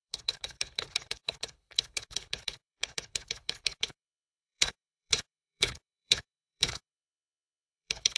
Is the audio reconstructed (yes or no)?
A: yes